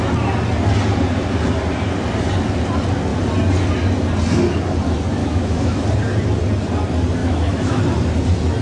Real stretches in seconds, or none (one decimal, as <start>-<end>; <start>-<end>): 0.0-5.2; 5.8-7.2; 7.8-8.6